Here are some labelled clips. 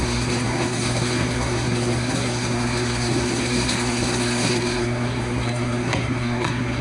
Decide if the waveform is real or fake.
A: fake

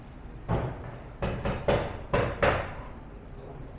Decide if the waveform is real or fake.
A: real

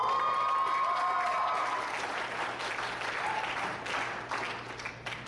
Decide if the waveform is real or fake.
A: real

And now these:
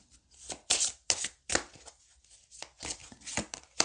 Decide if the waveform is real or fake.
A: real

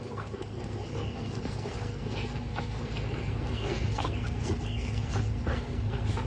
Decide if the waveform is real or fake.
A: fake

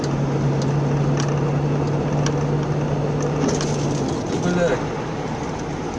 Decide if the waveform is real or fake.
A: real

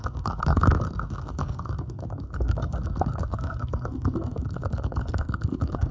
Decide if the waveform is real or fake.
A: fake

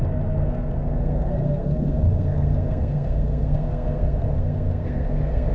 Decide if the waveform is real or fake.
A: fake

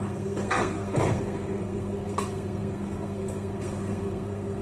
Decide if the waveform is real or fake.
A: fake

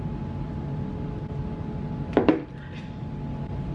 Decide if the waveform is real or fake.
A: real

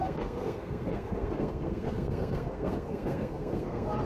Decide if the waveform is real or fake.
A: fake